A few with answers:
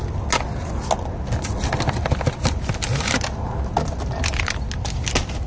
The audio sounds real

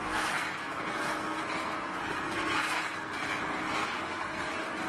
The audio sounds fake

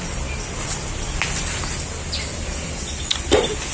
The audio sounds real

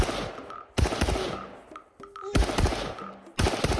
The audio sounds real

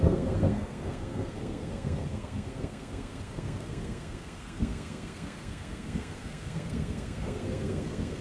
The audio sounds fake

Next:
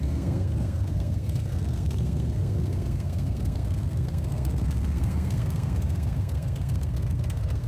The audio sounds fake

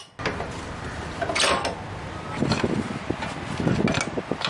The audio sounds real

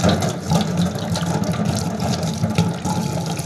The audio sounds real